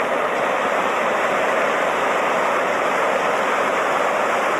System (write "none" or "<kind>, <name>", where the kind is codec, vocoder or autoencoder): vocoder, BigVGAN v2